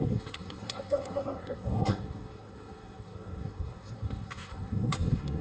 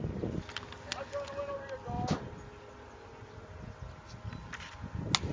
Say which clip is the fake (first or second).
first